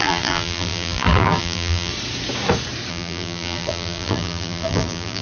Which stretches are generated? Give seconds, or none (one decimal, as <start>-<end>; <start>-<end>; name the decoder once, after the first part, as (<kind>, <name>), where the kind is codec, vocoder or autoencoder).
0.0-1.9 (vocoder, BigVGAN v2); 2.9-5.2